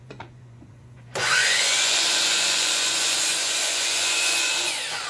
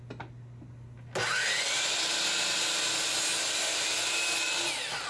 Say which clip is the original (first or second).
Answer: second